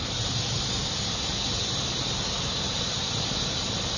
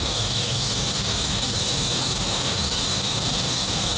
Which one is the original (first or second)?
first